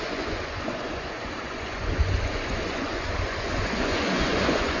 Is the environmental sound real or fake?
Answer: fake